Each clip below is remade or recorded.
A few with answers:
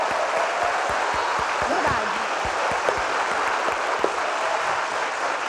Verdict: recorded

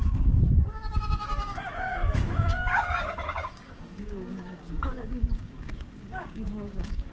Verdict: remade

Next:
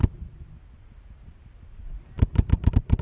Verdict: recorded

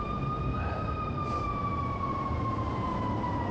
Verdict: recorded